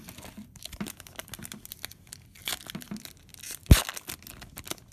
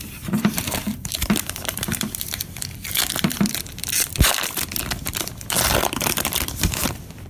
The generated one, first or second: second